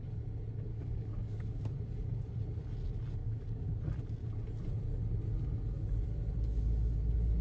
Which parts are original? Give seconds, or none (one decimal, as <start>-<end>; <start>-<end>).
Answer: 0.0-0.7; 1.6-3.2; 3.8-7.4